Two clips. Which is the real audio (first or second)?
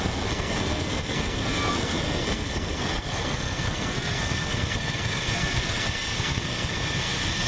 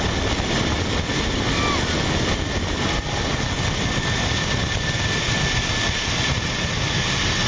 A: second